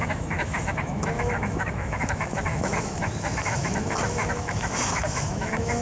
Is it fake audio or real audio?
fake